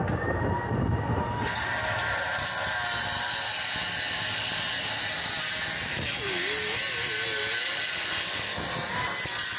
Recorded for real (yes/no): yes